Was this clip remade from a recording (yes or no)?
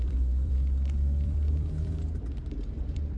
yes